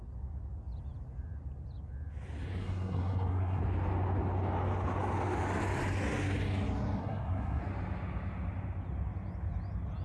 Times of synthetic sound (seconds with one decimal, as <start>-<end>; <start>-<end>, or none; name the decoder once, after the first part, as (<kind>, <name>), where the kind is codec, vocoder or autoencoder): 2.6-3.6 (codec, SNAC); 7.0-7.6